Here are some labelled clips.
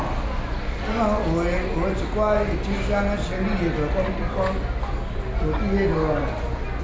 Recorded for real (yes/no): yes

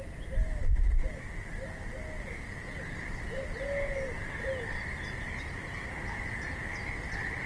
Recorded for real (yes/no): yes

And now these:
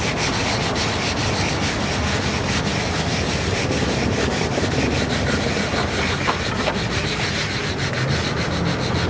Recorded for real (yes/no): yes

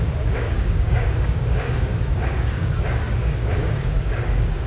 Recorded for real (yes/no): no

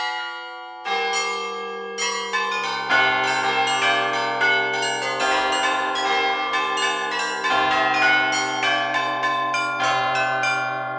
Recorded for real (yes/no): yes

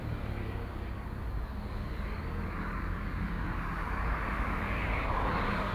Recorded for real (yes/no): no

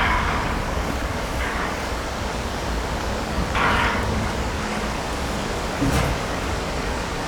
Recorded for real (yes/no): no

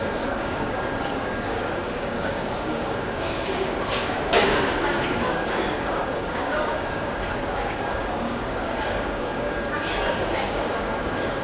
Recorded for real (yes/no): no